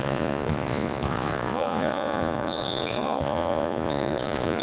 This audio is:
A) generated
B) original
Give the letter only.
A